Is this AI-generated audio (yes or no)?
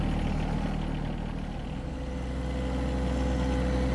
no